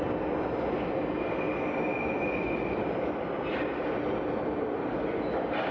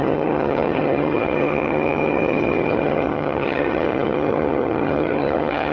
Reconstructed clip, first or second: second